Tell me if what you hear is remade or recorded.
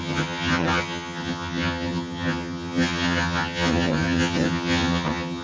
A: remade